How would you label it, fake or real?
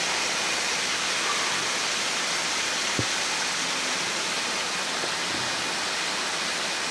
real